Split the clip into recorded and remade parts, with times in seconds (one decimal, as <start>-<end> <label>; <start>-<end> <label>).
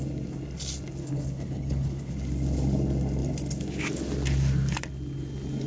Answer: 0.0-1.0 recorded; 1.0-2.1 remade; 2.1-5.7 recorded